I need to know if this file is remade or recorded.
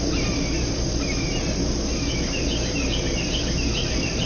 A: remade